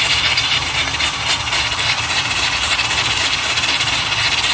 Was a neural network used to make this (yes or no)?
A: no